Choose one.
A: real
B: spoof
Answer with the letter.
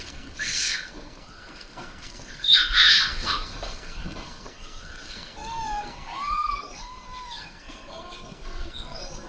B